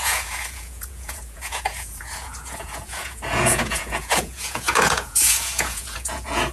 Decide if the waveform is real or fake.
fake